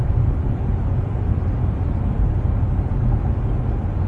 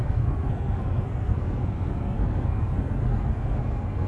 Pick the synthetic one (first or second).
second